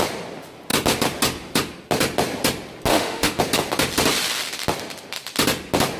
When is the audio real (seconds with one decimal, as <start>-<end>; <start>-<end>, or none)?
0.0-2.9; 3.4-6.0